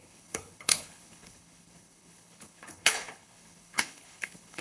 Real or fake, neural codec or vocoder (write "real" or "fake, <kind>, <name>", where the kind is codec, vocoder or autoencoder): fake, codec, HILCodec